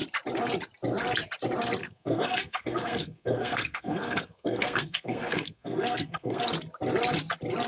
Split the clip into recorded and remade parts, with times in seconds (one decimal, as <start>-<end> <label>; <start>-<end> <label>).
0.0-1.8 recorded; 1.8-6.4 remade; 6.4-7.7 recorded